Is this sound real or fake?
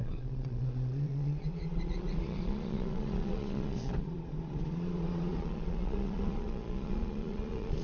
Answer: fake